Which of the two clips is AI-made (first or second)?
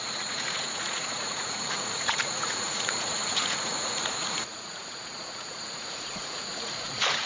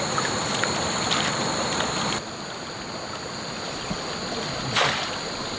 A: first